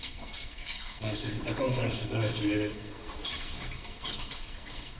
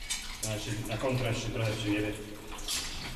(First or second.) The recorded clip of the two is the second